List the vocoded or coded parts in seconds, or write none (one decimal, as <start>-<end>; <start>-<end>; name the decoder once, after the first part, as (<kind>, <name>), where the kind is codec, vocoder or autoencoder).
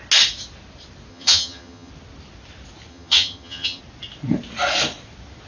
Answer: 1.1-1.9 (vocoder, HiFi-GAN); 2.9-3.8